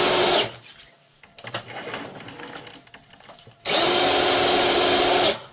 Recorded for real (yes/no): yes